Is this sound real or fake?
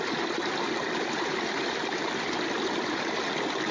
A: real